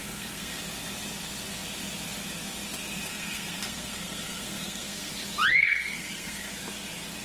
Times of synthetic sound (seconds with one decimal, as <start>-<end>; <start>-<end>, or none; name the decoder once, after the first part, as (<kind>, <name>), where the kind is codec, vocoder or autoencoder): 0.0-0.6 (codec, SNAC); 3.1-5.1; 5.5-6.5